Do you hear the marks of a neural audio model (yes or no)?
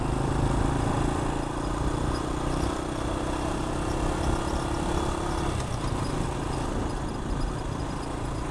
no